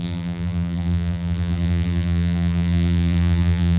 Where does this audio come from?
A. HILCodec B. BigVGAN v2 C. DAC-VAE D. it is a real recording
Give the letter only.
B